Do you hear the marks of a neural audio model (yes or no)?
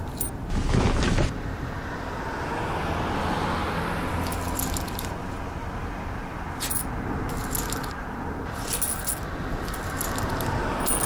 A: no